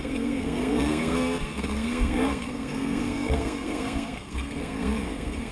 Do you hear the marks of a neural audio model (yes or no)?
yes